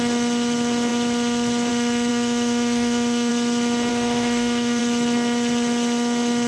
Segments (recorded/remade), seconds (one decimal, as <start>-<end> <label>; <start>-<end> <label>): 0.0-2.1 recorded; 2.1-3.3 remade; 3.3-3.9 recorded; 3.9-4.8 remade; 4.8-6.5 recorded